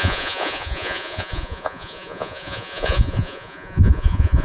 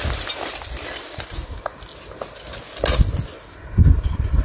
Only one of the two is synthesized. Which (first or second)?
first